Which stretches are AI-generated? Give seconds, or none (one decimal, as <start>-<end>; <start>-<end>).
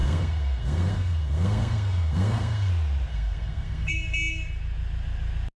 0.0-2.7; 3.1-3.9